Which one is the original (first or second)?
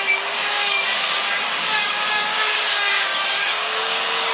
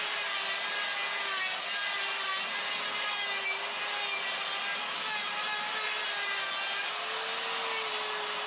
second